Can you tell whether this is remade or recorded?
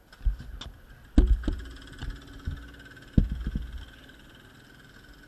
recorded